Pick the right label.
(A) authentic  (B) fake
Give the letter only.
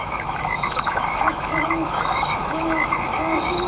B